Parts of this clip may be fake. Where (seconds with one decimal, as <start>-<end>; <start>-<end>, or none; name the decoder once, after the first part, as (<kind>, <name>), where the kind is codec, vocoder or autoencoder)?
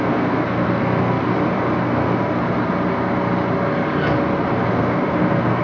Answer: 0.0-1.3 (codec, SNAC); 1.8-2.4; 4.7-5.6